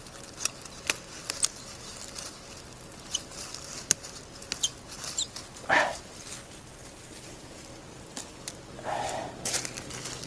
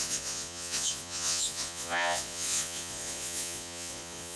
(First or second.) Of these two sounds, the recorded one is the first